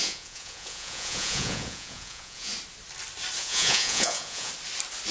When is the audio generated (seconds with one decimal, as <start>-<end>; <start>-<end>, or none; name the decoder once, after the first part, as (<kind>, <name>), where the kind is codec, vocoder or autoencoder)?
0.0-2.5 (vocoder, Vocos); 3.4-4.5

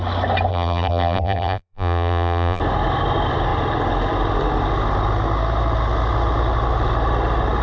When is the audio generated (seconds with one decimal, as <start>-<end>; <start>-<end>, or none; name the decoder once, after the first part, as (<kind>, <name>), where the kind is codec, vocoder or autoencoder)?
0.5-2.6 (vocoder, BigVGAN v2)

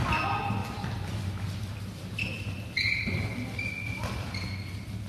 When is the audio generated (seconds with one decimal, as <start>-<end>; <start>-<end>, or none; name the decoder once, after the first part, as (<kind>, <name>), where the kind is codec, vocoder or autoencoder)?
none

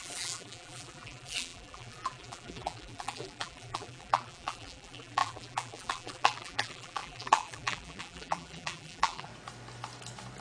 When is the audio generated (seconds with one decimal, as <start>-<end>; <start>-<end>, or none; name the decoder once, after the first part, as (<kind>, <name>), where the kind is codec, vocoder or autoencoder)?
0.0-9.3 (vocoder, BigVGAN v2)